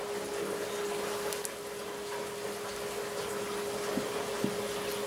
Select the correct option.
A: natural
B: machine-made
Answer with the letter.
A